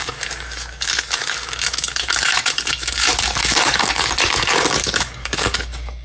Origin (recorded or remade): remade